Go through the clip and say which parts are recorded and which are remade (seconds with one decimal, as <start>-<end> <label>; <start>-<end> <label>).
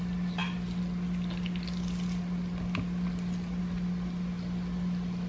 0.0-5.3 recorded